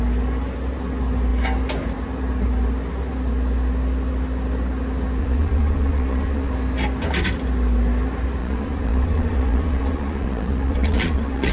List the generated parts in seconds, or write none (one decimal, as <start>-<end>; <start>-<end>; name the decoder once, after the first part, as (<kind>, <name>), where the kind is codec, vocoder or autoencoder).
5.2-6.5 (vocoder, Vocos); 8.4-11.5